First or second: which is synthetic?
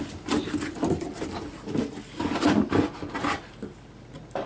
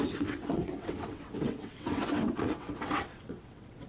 second